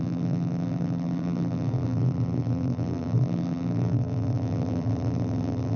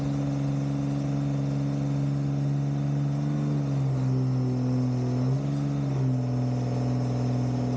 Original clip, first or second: second